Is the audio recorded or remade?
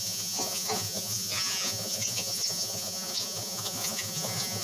remade